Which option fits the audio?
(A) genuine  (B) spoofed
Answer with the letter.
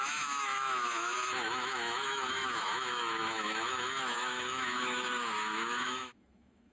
B